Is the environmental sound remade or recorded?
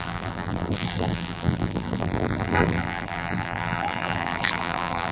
remade